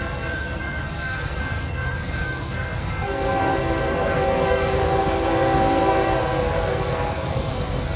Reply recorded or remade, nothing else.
remade